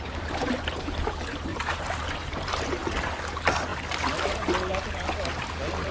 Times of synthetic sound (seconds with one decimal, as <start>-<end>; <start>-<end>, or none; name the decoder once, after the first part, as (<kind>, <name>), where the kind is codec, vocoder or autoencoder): 1.5-3.1 (vocoder, BigVGAN v2)